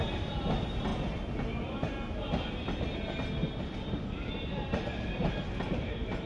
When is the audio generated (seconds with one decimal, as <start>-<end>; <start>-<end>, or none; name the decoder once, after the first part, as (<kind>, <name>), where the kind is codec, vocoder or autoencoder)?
none